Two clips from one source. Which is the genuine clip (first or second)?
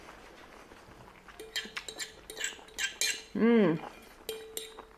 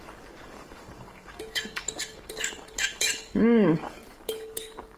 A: first